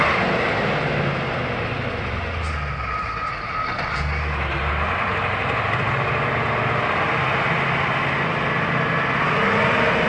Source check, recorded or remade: recorded